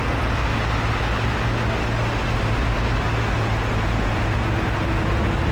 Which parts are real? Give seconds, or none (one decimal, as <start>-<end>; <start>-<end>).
0.4-3.7